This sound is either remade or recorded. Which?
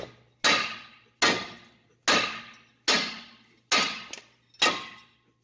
recorded